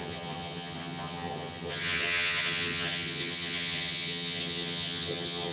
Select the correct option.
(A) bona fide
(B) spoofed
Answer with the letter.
B